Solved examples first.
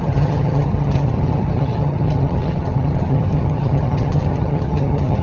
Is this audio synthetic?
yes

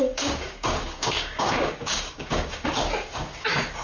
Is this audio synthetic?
yes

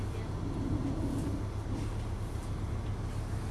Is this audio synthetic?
no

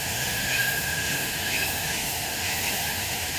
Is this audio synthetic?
yes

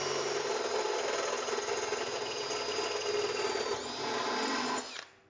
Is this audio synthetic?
no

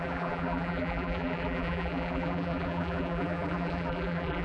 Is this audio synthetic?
yes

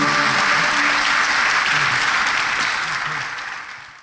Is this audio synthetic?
no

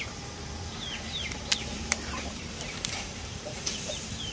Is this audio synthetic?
yes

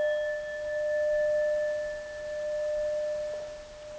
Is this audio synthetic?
no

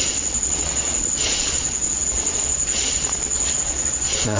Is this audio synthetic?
yes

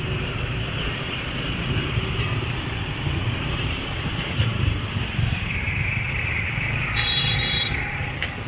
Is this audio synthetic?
yes